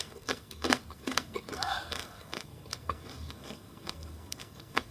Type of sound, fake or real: fake